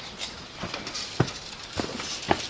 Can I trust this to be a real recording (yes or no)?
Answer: yes